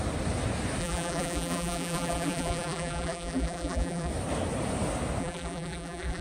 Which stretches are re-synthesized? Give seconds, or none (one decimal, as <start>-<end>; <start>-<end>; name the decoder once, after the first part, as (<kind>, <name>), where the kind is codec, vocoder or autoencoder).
0.8-4.1 (vocoder, BigVGAN v2); 5.2-6.2